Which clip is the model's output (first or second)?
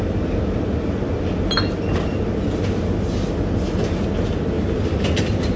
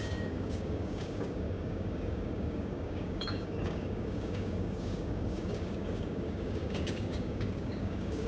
second